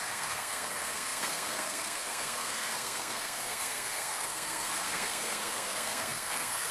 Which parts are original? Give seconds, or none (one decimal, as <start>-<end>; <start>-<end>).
none